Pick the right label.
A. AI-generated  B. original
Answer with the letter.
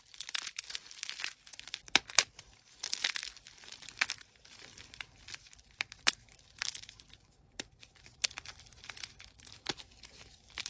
A